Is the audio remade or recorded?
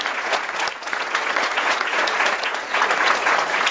remade